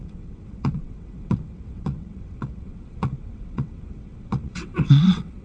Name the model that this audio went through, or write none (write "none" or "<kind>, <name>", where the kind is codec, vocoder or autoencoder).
vocoder, WaveNeXt